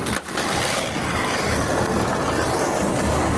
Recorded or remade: recorded